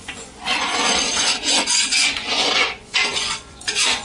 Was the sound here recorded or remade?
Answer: remade